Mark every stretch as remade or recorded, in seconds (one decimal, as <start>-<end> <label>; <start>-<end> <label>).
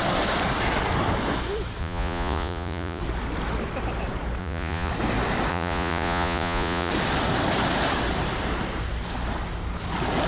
0.0-1.8 recorded; 1.8-3.0 remade; 3.0-4.4 recorded; 4.4-4.9 remade; 4.9-5.5 recorded; 5.5-6.9 remade; 6.9-10.3 recorded